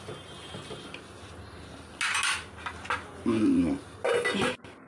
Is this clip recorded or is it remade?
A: recorded